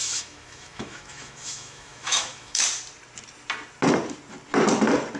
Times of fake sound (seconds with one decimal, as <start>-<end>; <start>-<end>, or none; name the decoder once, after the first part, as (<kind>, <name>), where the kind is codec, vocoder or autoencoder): 0.0-2.6 (autoencoder, DAC-VAE)